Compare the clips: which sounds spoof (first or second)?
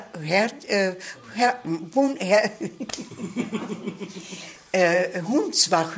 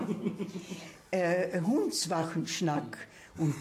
first